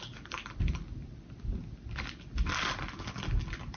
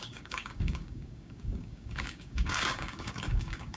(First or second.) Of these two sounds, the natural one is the first